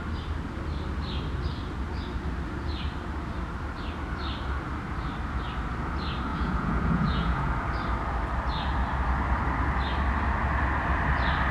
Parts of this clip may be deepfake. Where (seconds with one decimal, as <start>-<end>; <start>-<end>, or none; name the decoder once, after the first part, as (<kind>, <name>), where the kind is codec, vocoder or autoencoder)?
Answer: 6.3-7.5 (vocoder, Vocos)